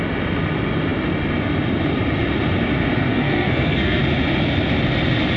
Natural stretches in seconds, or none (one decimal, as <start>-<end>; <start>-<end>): 0.0-3.1; 4.0-5.4